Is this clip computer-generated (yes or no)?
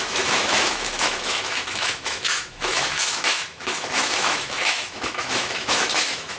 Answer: yes